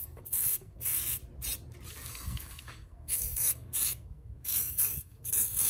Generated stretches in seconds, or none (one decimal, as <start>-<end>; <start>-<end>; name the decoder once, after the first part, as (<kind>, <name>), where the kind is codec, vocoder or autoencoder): 0.0-1.2 (codec, SNAC); 1.9-5.7